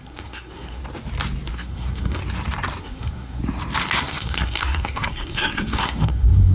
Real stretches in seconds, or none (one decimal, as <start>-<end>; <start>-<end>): 0.8-1.5; 2.2-2.8; 3.4-4.0